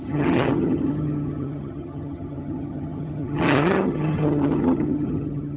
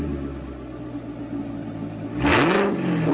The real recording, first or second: second